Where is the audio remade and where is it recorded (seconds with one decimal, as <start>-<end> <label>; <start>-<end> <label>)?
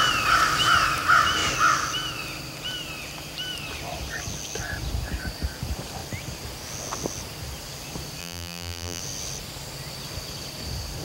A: 0.0-8.2 recorded; 8.2-9.0 remade; 9.0-11.0 recorded